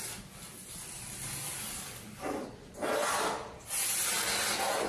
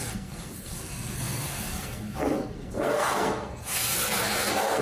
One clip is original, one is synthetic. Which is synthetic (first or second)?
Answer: second